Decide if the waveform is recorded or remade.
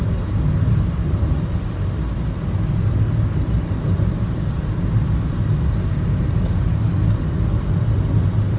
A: recorded